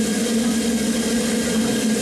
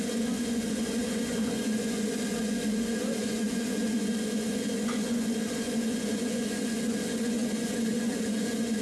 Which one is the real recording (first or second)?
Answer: first